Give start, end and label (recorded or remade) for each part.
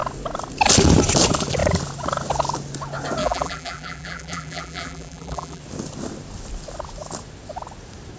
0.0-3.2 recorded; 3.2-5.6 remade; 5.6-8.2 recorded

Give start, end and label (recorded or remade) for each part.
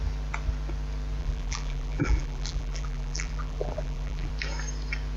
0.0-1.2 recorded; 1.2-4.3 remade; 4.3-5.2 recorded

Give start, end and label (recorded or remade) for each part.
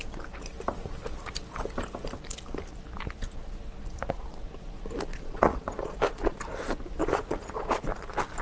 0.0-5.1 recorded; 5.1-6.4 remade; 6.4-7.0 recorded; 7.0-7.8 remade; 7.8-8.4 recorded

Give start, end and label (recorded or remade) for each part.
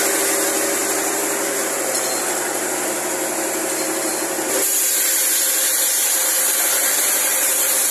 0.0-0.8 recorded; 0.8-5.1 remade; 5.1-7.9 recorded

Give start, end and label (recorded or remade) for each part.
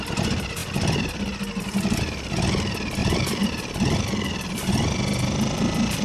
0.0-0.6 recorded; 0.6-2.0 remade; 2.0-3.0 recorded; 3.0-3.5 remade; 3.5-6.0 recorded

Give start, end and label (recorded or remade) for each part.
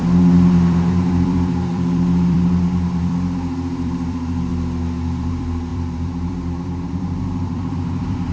0.0-4.5 remade; 4.5-5.2 recorded; 5.2-8.3 remade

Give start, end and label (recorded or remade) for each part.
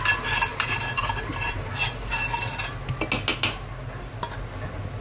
0.0-0.5 recorded; 0.5-2.1 remade; 2.1-5.0 recorded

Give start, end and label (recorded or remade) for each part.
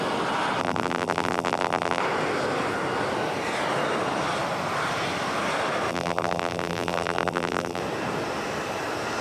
0.0-0.6 recorded; 0.6-2.0 remade; 2.0-5.9 recorded; 5.9-7.8 remade; 7.8-9.2 recorded